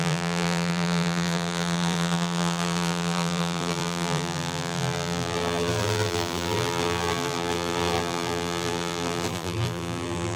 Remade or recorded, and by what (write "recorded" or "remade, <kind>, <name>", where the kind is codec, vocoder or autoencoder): remade, vocoder, BigVGAN v2